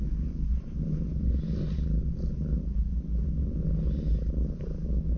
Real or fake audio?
real